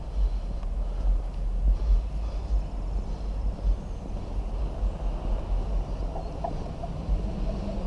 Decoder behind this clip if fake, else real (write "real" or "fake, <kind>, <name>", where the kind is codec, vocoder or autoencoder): real